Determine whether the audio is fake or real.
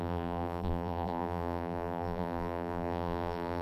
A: fake